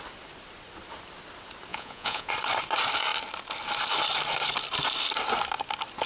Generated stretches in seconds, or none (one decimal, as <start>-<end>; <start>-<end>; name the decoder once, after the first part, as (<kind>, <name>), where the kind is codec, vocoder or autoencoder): 1.7-2.3 (vocoder, Vocos)